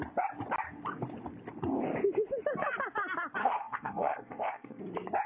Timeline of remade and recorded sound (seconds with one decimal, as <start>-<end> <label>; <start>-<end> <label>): 0.0-3.4 recorded; 3.4-4.8 remade; 4.8-5.3 recorded